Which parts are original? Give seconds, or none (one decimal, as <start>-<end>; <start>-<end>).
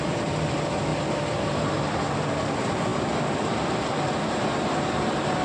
0.0-5.4